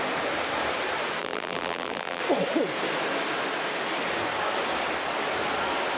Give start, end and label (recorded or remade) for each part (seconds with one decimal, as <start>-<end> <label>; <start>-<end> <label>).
0.0-1.2 recorded; 1.2-2.2 remade; 2.2-6.0 recorded